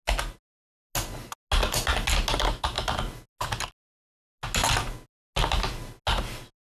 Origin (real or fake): real